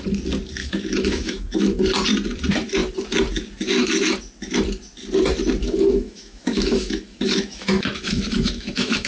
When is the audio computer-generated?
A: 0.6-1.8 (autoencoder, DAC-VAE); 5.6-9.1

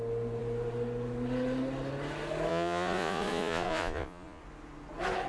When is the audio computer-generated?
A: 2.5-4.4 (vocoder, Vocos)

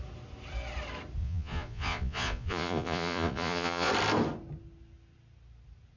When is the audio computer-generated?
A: 1.2-3.9 (vocoder, Vocos)

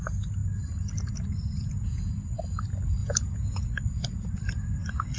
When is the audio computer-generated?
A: 1.6-2.1 (vocoder, Vocos); 3.0-3.7

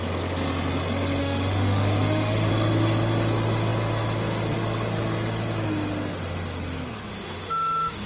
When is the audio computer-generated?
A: 1.2-2.5 (autoencoder, DAC-VAE); 7.1-8.1

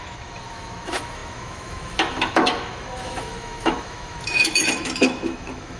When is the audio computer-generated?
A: 0.0-5.8 (autoencoder, DAC-VAE)